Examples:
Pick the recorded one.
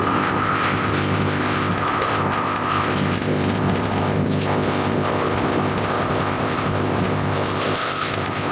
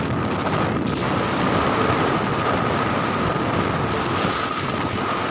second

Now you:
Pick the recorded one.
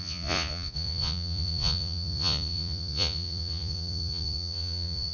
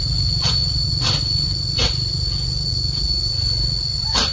second